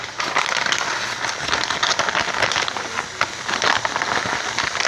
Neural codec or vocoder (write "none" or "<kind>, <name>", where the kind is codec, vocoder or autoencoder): none